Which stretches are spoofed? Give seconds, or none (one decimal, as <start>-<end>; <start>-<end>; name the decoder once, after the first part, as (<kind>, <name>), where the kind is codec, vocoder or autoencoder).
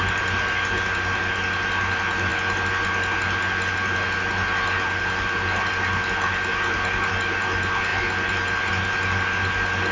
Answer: none